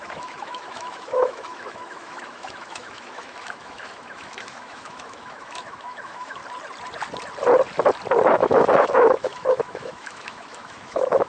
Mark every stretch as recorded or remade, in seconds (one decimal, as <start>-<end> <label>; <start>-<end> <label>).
0.0-6.4 remade; 6.4-8.3 recorded; 8.3-11.3 remade